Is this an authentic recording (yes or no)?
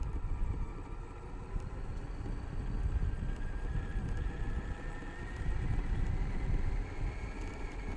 yes